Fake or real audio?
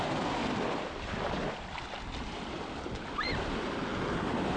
real